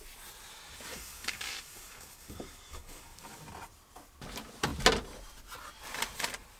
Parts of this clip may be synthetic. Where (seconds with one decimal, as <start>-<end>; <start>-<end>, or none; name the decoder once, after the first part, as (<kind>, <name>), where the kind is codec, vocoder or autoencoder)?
0.9-3.4 (codec, DAC)